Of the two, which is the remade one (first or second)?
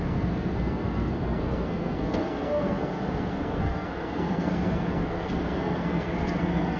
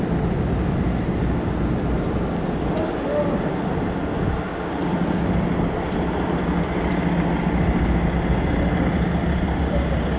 first